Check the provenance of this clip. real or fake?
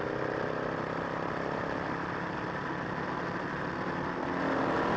real